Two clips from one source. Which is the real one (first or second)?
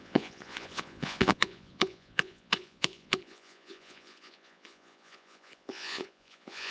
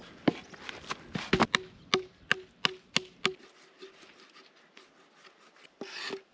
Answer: second